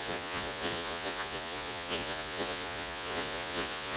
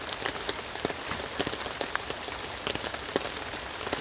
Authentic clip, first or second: second